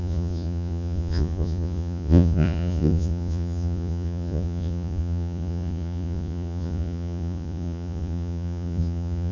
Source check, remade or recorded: remade